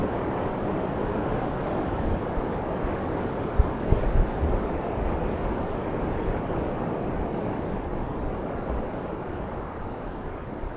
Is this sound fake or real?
fake